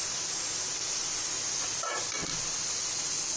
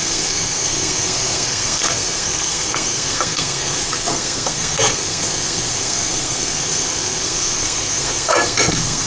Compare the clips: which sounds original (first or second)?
first